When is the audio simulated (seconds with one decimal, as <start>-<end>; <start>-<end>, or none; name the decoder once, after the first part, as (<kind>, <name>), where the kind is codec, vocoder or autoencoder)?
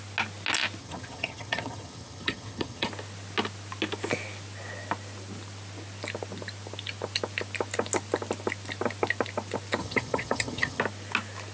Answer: 0.8-2.9 (vocoder, HiFi-GAN); 9.8-10.8